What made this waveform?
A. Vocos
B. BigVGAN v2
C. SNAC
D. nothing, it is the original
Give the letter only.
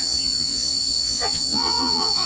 A